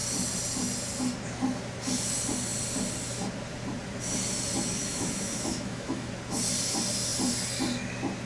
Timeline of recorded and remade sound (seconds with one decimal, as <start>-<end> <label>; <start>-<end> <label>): 0.0-4.8 recorded; 4.8-6.1 remade; 6.1-8.3 recorded